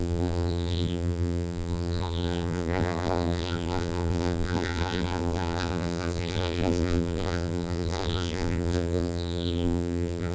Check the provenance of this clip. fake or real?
fake